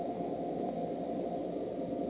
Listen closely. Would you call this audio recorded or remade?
recorded